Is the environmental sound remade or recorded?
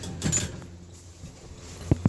recorded